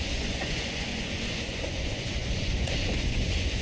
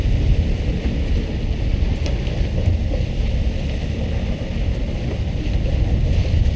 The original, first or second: second